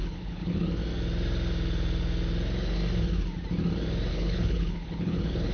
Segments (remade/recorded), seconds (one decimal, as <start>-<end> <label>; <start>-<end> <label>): 0.0-0.8 remade; 0.8-4.1 recorded; 4.1-5.5 remade